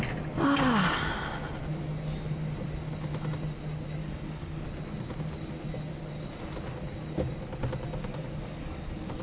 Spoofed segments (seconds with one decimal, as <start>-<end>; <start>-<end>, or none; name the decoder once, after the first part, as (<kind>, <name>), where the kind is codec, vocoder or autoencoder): 4.0-4.6 (codec, DAC); 8.0-9.2